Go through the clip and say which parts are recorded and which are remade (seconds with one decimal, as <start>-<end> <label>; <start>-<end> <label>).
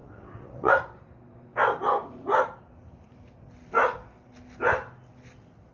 0.0-0.7 remade; 0.7-5.7 recorded